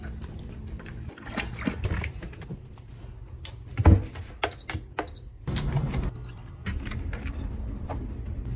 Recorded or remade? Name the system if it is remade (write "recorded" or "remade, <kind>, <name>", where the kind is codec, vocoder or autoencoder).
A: recorded